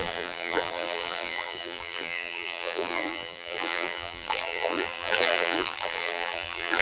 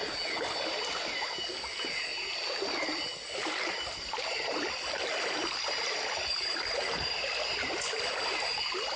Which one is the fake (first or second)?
first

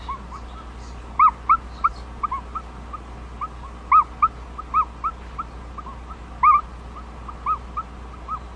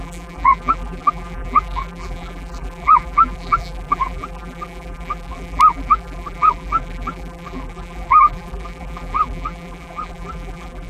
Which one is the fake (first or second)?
second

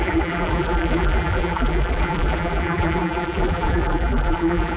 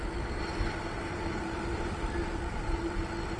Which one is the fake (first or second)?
first